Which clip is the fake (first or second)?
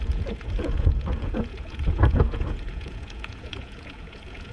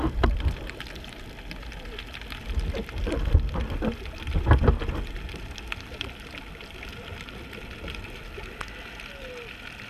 first